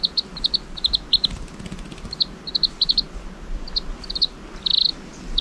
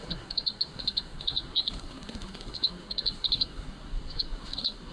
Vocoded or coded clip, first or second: second